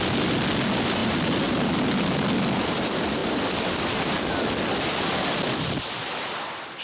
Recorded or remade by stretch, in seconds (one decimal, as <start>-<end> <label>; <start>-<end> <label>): 0.0-6.8 recorded